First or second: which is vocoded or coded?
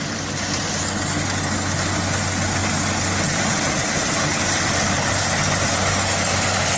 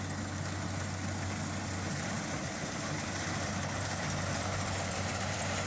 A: second